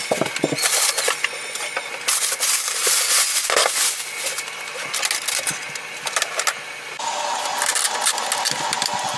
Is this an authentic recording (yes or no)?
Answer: yes